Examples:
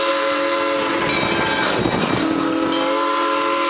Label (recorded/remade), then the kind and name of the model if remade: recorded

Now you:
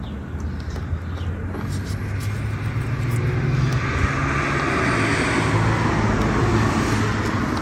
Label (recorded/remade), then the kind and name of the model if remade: recorded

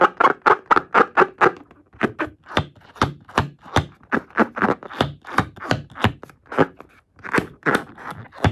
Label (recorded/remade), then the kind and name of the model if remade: recorded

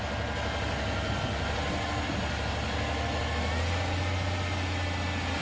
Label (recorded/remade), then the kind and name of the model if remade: recorded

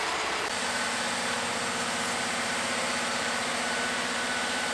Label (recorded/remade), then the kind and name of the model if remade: remade, vocoder, BigVGAN v2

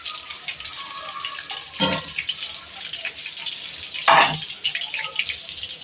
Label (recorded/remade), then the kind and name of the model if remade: recorded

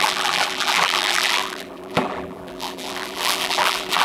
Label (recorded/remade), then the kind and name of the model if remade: remade, vocoder, BigVGAN v2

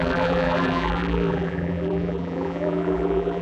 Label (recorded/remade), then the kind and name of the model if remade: remade, vocoder, BigVGAN v2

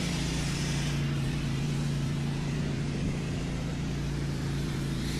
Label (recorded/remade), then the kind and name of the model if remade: remade, vocoder, BigVGAN v2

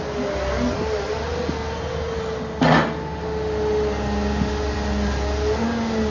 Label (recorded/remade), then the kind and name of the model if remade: recorded